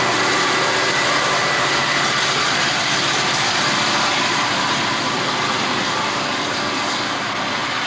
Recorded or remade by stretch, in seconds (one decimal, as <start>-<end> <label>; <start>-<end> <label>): 0.0-7.9 recorded